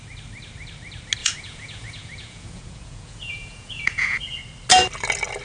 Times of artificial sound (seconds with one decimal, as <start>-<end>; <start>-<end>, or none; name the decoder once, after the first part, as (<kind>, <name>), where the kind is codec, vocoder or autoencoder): 1.2-4.4 (vocoder, Vocos)